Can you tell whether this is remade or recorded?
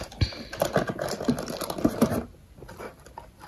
remade